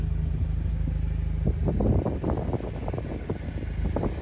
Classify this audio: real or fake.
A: real